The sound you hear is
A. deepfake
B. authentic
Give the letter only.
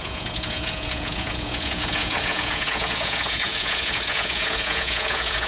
A